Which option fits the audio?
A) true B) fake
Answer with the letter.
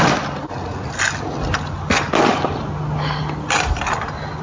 A